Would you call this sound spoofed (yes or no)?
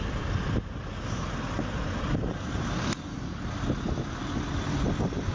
no